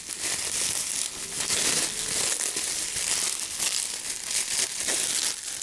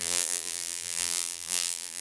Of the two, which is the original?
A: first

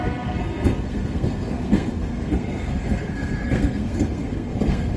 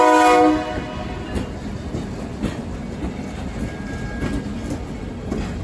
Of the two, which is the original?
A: second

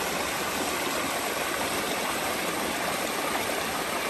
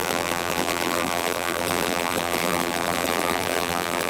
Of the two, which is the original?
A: first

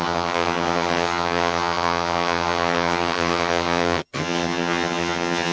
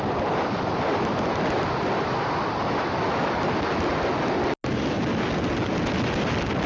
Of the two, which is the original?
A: second